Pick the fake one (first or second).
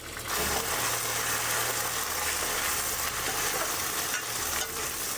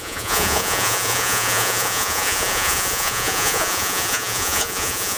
second